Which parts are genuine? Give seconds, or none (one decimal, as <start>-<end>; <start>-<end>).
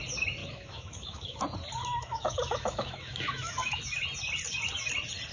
0.0-0.4; 1.4-1.8; 3.8-5.3